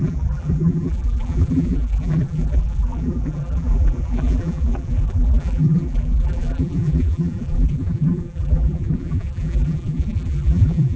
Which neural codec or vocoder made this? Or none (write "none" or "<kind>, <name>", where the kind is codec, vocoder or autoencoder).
vocoder, BigVGAN v2